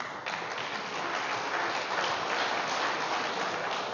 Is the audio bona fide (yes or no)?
yes